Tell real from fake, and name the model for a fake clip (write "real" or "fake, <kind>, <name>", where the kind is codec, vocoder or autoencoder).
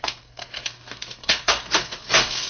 fake, codec, SNAC